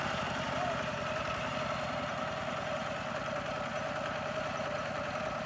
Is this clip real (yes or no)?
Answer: yes